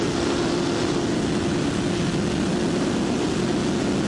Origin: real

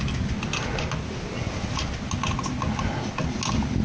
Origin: real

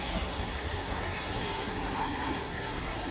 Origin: fake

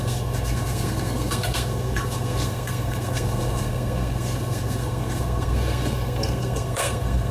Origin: fake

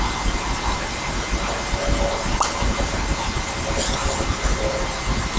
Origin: real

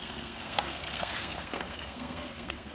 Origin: fake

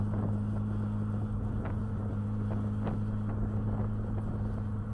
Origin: real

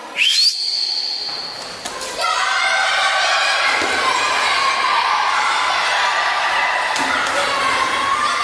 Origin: real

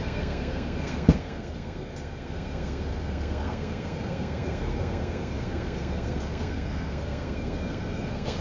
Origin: fake